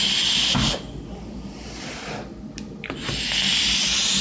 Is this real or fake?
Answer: real